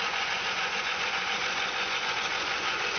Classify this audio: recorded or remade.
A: remade